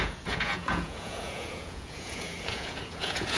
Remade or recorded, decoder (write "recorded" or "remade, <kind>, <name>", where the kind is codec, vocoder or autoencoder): remade, vocoder, Vocos